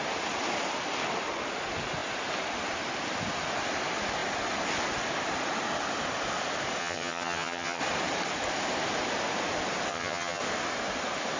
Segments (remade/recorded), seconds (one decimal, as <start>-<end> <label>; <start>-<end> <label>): 0.0-6.8 recorded; 6.8-7.8 remade; 7.8-9.9 recorded; 9.9-10.4 remade; 10.4-11.4 recorded